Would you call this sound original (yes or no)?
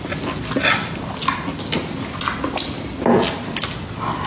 yes